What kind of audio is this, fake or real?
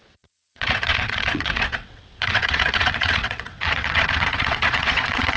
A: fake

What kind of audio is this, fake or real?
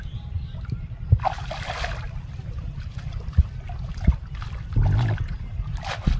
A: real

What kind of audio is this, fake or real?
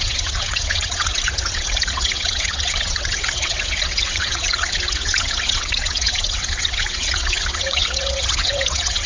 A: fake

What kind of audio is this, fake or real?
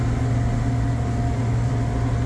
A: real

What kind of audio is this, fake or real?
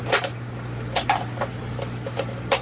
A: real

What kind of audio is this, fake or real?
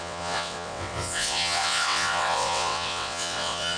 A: fake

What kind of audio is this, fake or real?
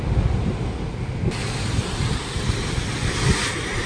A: real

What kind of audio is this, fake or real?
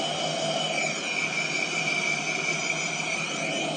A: real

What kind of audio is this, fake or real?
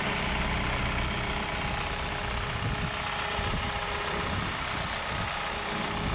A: real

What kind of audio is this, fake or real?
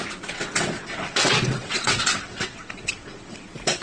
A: fake